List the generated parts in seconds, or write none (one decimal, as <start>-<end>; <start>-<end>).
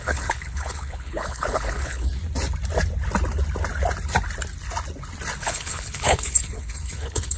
0.0-2.2; 5.4-7.4